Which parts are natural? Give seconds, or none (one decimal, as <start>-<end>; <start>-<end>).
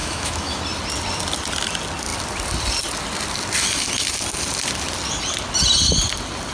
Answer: 0.6-6.5